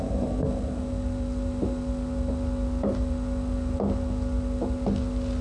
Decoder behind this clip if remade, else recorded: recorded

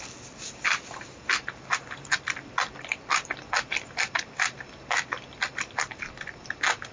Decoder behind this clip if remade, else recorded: recorded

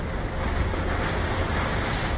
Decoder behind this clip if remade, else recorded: recorded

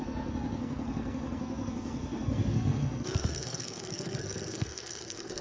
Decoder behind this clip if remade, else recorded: remade, codec, SNAC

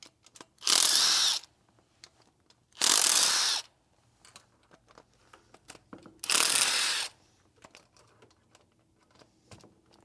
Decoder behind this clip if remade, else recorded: recorded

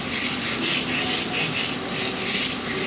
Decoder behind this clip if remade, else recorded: recorded